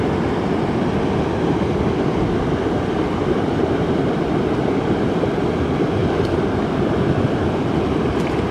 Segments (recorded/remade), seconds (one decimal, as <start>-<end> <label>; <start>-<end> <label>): 0.0-6.0 remade; 6.0-6.6 recorded; 6.6-8.5 remade